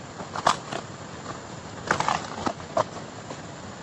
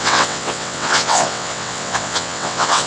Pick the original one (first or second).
first